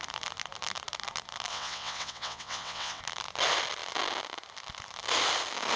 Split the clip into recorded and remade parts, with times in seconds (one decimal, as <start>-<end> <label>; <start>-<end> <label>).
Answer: 0.0-1.5 recorded; 1.5-3.0 remade; 3.0-5.8 recorded